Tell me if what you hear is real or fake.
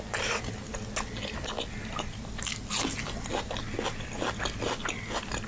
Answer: real